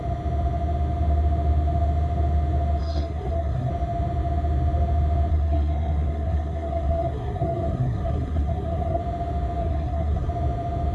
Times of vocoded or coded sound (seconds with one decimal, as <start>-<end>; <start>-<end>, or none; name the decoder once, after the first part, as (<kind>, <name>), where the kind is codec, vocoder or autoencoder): 2.8-3.7 (codec, SNAC); 5.3-9.0; 9.6-10.3